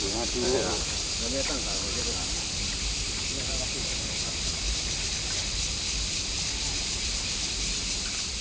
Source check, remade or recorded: remade